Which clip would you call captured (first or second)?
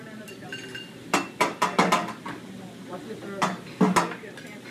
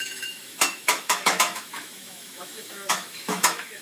first